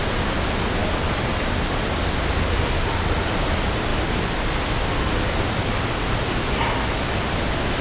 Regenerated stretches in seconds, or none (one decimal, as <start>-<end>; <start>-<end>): none